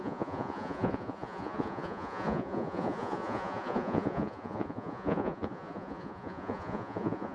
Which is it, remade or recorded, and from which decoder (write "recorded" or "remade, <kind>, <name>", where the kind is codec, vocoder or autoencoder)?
remade, vocoder, Vocos